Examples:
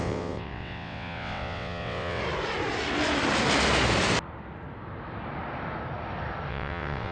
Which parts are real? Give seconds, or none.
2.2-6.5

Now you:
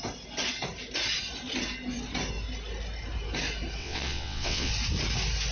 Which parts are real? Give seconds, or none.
0.0-3.8; 4.7-5.5

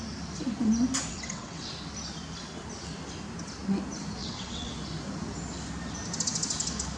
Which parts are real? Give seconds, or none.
0.0-1.1; 1.7-4.2; 4.7-7.0

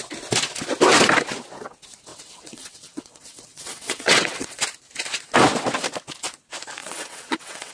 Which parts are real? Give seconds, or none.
0.0-2.1; 4.6-6.8

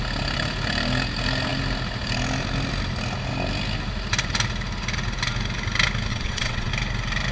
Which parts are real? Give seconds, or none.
0.0-6.1; 6.7-7.3

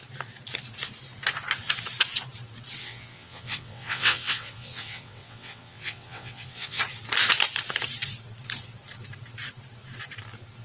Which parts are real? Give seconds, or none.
0.0-2.8; 6.8-10.6

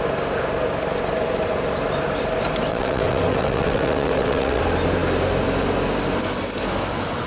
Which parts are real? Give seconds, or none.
0.0-2.7; 4.6-7.3